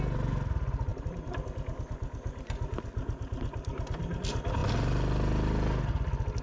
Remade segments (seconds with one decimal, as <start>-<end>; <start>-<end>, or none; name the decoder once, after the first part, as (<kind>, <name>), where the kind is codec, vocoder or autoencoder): none